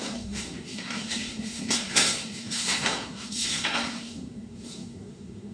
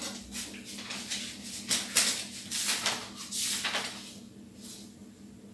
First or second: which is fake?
first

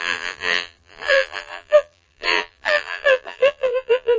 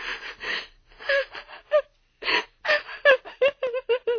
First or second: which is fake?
first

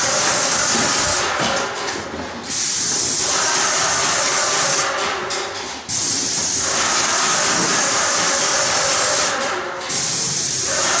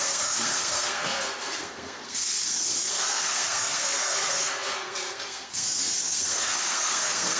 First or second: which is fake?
second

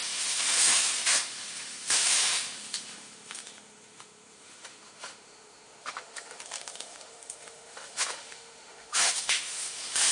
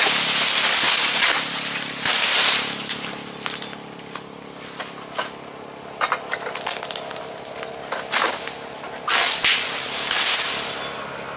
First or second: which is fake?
first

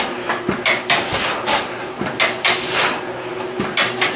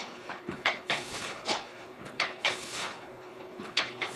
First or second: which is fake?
second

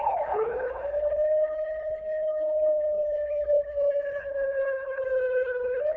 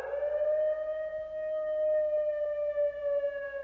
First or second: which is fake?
first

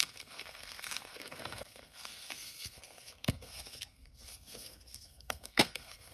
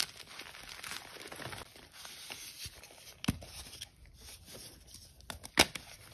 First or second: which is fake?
first